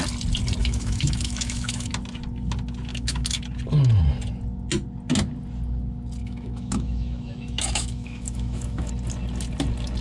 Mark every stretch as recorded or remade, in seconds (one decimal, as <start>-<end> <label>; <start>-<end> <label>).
0.0-0.6 recorded; 0.6-1.9 remade; 1.9-2.9 recorded; 2.9-3.4 remade; 3.4-6.2 recorded; 6.2-8.9 remade; 8.9-10.0 recorded